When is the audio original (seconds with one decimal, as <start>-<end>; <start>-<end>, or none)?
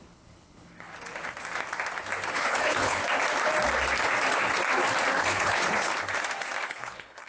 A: 0.9-2.3; 3.0-5.2; 5.9-6.7